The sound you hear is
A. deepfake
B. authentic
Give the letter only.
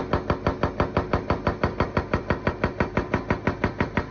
B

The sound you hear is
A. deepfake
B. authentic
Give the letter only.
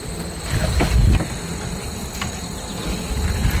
B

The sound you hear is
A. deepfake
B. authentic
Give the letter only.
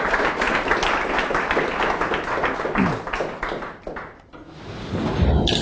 B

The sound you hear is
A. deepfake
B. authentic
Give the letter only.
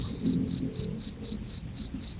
B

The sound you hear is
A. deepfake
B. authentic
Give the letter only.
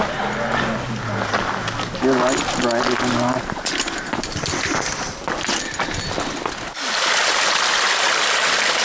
B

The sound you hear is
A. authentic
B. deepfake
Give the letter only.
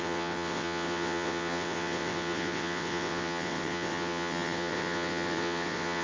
B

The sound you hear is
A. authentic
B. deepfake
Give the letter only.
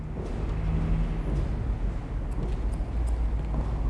A